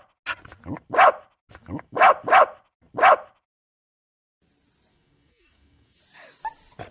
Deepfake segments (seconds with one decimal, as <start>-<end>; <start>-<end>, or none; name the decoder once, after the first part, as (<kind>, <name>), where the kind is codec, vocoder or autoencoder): 1.6-2.1 (autoencoder, DAC-VAE); 4.9-6.0